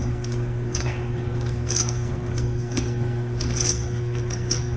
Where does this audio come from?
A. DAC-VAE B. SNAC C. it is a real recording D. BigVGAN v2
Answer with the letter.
B